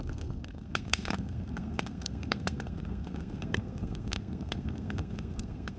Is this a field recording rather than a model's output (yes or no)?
no